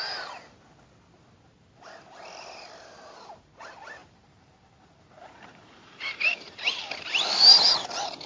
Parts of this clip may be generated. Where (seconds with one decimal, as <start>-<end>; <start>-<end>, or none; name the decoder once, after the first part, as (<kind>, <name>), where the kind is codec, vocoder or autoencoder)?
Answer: 4.0-6.9 (vocoder, BigVGAN v2)